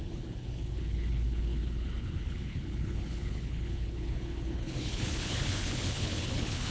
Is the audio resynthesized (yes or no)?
yes